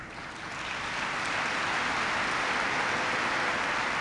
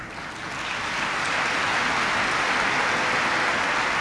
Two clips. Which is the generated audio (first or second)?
first